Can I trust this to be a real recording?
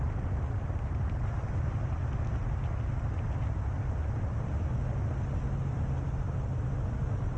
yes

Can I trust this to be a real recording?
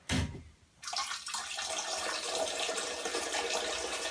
yes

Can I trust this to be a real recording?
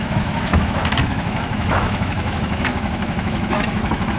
no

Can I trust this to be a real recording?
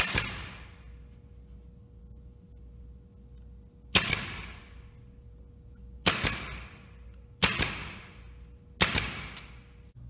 yes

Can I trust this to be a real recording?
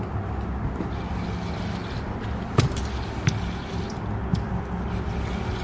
yes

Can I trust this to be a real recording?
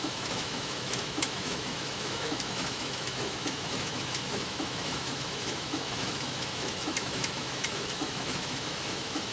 no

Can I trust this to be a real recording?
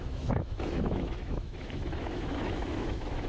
no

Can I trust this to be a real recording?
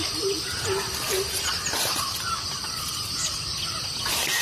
yes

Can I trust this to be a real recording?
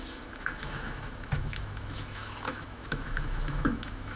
no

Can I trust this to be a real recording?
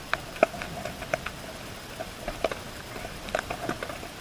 yes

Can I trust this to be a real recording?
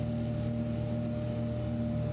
yes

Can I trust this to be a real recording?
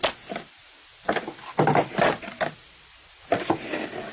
yes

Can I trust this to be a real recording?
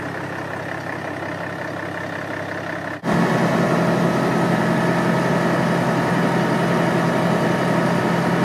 yes